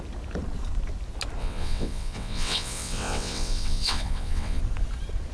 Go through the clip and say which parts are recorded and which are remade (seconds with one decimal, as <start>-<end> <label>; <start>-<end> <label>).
0.0-1.4 recorded; 1.4-4.6 remade; 4.6-5.3 recorded